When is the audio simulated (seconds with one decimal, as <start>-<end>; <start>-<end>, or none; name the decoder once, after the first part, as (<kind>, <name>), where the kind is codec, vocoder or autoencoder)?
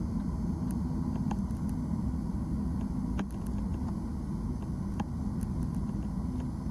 none